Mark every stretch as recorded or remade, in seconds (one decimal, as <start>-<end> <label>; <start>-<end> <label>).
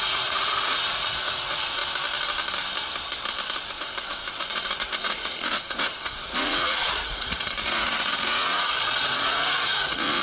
0.0-1.8 remade; 1.8-3.7 recorded; 3.7-10.2 remade